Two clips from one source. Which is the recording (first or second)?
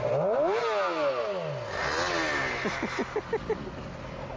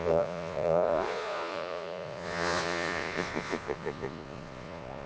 first